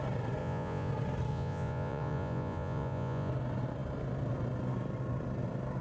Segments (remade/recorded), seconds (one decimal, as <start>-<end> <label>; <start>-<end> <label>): 0.0-0.4 recorded; 0.4-0.9 remade; 0.9-1.3 recorded; 1.3-3.3 remade; 3.3-5.8 recorded